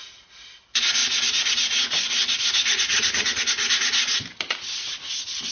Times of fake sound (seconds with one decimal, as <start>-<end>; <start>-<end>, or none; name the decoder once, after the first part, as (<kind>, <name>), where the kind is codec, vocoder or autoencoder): 2.9-3.4 (vocoder, HiFi-GAN)